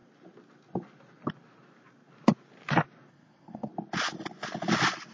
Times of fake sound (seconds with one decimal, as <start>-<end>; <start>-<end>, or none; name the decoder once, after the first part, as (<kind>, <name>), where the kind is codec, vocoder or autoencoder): 3.1-3.7 (codec, SNAC)